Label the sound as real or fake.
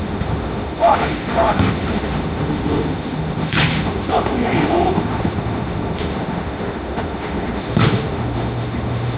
fake